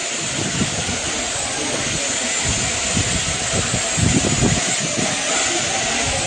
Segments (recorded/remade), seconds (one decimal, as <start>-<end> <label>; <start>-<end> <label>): 0.0-6.3 recorded